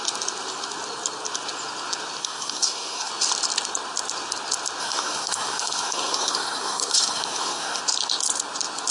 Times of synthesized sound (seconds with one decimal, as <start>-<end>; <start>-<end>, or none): 2.2-3.1; 4.8-7.8